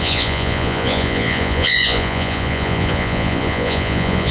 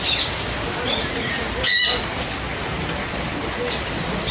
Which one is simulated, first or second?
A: first